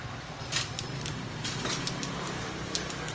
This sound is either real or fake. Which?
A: fake